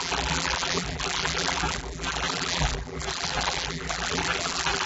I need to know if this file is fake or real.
fake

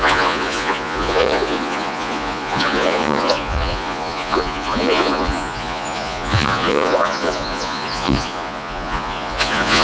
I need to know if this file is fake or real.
fake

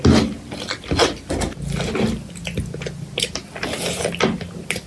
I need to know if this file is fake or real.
real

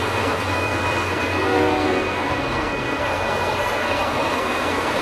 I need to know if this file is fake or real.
fake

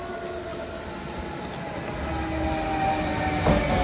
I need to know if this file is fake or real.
real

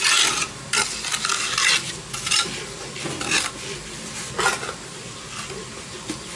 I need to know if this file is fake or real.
real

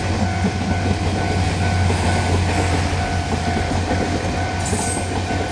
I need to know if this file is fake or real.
real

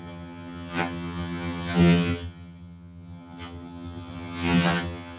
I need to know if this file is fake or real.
fake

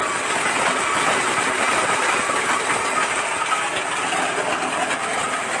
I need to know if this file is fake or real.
real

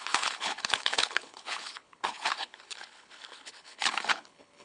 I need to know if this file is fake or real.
fake